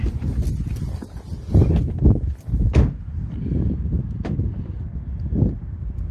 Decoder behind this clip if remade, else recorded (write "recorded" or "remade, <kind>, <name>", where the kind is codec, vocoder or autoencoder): recorded